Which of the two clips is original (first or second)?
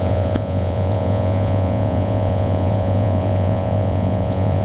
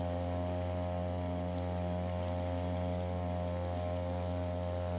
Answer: second